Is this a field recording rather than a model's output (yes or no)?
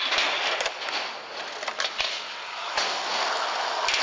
yes